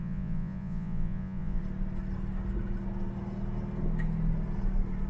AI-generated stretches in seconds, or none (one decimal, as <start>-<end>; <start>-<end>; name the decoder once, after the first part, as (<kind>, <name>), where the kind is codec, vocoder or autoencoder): 0.0-1.6 (vocoder, Vocos)